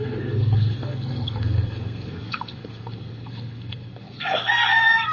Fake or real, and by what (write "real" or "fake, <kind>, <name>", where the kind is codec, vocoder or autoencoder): fake, codec, SNAC